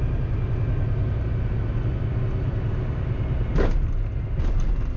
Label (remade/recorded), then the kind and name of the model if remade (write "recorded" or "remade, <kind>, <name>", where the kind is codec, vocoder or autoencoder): recorded